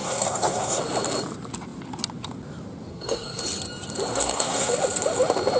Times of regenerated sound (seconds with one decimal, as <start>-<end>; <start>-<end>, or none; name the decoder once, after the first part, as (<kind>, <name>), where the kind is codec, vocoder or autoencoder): 0.0-0.8 (codec, SNAC); 2.9-3.4; 4.1-4.7